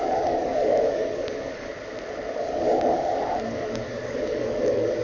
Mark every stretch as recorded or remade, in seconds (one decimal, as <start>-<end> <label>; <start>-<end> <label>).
0.0-1.7 remade; 1.7-2.4 recorded; 2.4-5.0 remade